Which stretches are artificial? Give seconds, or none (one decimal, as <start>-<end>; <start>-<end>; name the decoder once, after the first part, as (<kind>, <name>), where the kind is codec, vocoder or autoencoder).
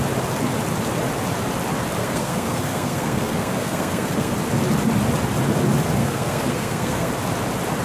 2.0-4.3 (codec, SNAC); 6.0-7.1